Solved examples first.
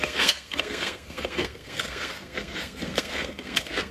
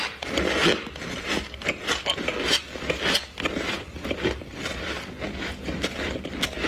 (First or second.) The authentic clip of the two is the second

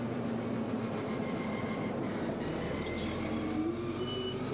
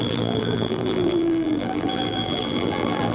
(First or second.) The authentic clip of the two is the first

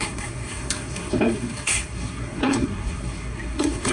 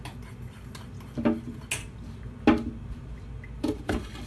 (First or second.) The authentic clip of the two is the second